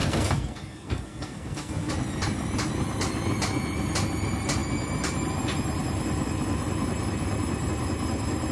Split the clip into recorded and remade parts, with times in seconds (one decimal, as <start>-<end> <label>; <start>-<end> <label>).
0.0-1.9 remade; 1.9-8.5 recorded